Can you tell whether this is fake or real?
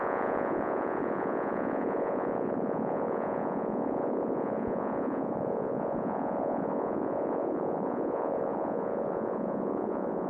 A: fake